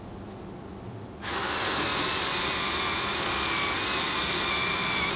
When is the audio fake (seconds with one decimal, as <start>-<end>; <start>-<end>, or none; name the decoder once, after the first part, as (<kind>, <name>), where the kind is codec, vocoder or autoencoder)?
none